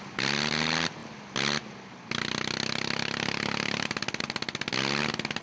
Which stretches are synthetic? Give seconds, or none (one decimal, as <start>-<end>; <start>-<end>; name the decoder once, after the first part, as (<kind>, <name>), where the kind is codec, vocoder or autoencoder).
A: none